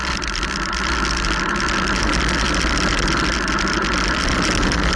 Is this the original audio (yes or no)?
yes